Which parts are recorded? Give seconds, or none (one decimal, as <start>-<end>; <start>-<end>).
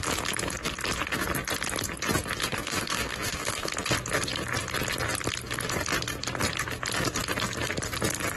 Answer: 0.0-2.4; 3.7-8.4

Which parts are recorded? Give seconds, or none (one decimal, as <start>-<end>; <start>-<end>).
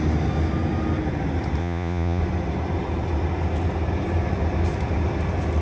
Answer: 0.0-1.6; 2.2-5.6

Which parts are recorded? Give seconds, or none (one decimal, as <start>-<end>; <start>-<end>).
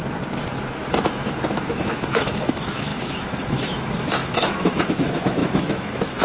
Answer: 0.0-1.0